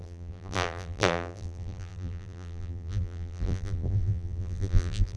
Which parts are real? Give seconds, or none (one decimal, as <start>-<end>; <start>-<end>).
none